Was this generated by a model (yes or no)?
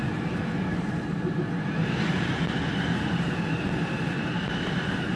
no